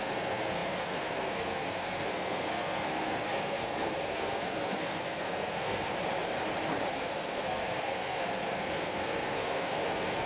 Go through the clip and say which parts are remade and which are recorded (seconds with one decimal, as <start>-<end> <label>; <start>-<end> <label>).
0.0-5.9 remade; 5.9-6.9 recorded; 6.9-10.3 remade